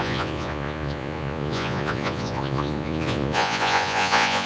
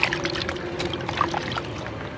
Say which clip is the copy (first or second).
first